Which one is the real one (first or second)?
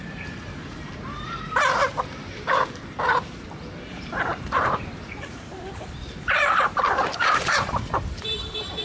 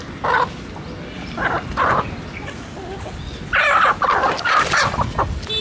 second